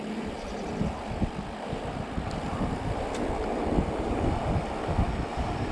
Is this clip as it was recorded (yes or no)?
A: yes